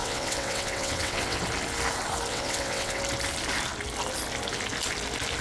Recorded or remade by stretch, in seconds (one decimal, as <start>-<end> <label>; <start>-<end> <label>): 0.0-1.4 remade; 1.4-2.3 recorded; 2.3-3.0 remade; 3.0-5.4 recorded